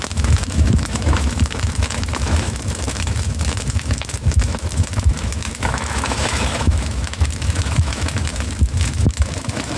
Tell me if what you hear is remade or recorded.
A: remade